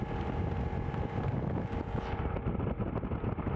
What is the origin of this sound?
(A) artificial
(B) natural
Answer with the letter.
B